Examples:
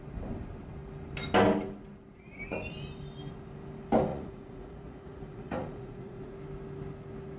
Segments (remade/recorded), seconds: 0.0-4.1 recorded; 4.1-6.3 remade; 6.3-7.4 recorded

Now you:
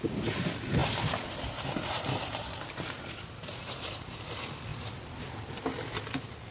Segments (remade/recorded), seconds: 0.0-0.8 recorded; 0.8-4.3 remade; 4.3-6.5 recorded

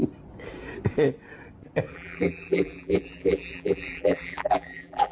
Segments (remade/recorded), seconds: 0.0-1.9 recorded; 1.9-5.1 remade

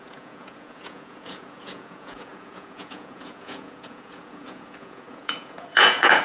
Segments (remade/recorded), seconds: 0.0-6.2 remade